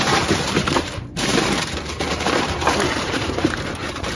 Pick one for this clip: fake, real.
fake